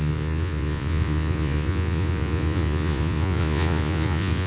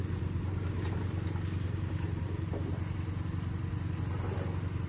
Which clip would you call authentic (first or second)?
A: second